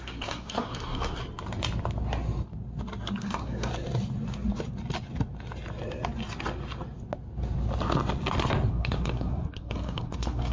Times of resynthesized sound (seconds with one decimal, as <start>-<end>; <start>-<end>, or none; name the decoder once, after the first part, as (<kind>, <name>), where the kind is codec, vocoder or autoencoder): 0.0-1.2 (codec, SNAC); 3.2-3.7; 8.7-10.5